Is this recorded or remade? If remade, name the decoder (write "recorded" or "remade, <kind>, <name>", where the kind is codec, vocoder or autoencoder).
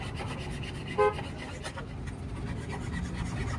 recorded